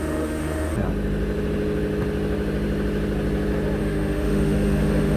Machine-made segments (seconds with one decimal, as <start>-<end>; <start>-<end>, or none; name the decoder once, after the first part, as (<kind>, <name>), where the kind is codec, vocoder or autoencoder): 0.0-0.7 (autoencoder, DAC-VAE); 3.8-5.2